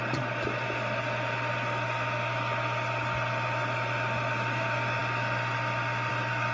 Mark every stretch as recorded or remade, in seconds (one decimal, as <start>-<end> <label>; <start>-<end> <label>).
0.0-6.5 recorded